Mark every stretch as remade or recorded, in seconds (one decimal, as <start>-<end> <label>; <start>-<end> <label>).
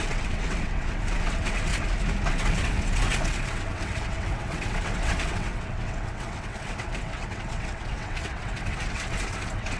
0.0-1.7 remade; 1.7-2.3 recorded; 2.3-9.8 remade